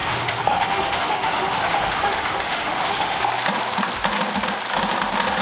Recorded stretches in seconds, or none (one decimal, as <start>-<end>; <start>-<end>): 3.2-5.4

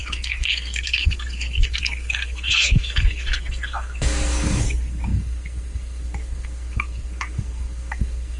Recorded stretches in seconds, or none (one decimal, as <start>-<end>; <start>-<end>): none

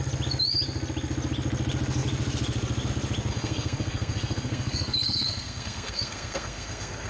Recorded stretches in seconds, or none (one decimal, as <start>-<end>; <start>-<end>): 0.0-3.3

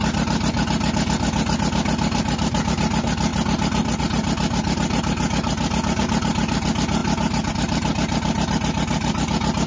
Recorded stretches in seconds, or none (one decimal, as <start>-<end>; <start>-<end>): 0.0-9.7

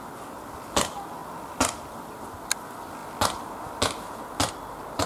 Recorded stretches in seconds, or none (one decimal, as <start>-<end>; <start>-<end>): 3.0-4.5

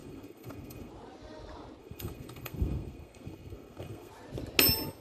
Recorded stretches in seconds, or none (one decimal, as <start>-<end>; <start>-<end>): 0.9-1.8; 4.1-5.0

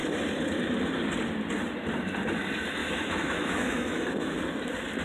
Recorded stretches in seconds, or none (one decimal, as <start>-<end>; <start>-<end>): 0.0-2.8; 4.4-5.0